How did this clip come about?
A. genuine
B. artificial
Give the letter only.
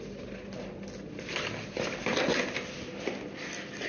A